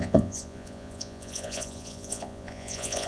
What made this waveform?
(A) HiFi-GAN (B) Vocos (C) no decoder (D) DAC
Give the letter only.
B